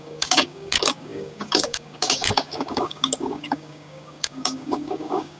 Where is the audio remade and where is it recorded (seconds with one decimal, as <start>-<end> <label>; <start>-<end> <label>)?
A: 0.0-5.4 remade

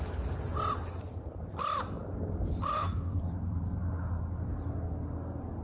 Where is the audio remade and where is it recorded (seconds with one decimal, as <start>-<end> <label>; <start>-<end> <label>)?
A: 0.0-2.7 recorded; 2.7-3.2 remade; 3.2-5.6 recorded